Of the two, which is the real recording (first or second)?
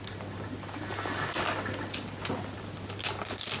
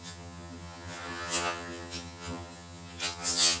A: first